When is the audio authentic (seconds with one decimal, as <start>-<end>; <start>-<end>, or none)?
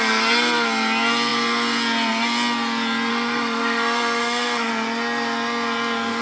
0.0-3.1; 4.7-6.2